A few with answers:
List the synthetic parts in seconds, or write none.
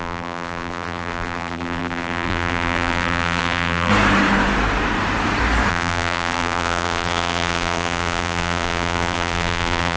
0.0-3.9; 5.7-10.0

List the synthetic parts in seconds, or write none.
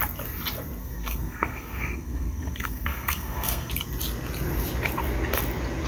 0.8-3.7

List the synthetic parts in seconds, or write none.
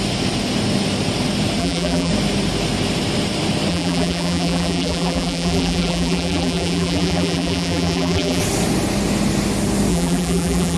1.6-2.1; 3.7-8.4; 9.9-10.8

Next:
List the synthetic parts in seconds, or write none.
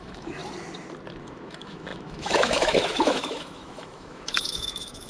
0.0-0.4; 1.2-5.1